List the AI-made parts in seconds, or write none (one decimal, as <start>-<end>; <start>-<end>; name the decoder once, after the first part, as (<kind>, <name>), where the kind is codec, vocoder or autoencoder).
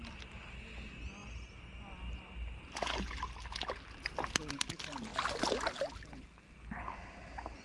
none